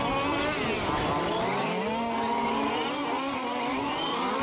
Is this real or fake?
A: real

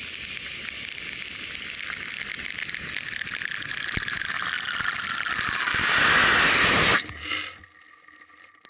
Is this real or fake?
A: real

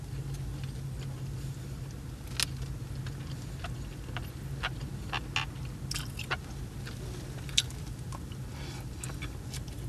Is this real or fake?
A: real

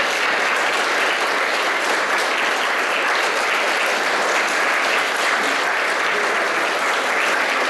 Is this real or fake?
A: real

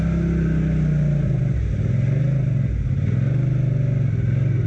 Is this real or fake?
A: real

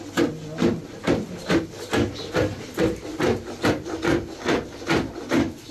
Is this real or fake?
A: real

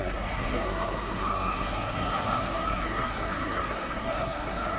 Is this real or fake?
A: fake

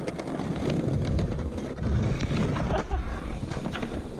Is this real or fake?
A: real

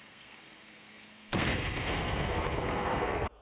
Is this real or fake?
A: fake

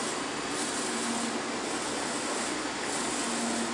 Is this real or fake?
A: real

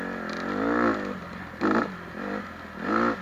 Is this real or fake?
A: real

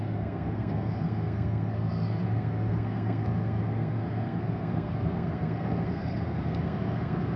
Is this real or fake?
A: fake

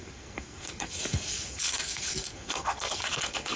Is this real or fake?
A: fake